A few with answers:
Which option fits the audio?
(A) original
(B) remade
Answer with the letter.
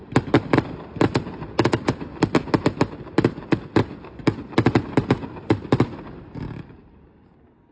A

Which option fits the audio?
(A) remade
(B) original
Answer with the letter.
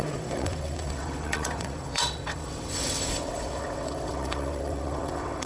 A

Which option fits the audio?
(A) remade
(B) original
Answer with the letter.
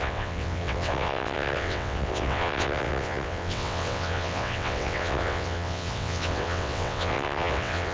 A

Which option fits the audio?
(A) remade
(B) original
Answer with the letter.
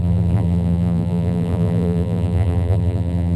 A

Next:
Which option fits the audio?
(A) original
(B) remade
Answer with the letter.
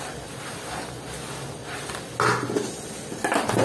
A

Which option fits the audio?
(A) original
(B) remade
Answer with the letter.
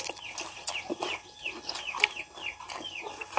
A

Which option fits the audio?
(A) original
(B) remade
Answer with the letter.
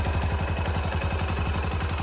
A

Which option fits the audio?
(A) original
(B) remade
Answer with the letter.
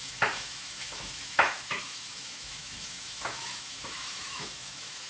B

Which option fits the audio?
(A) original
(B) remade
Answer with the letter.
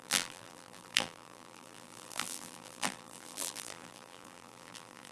B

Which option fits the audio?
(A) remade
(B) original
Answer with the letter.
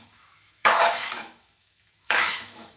A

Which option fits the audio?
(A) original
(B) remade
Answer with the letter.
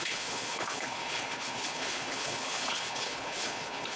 B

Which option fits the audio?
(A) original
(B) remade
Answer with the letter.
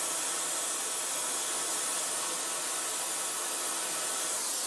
A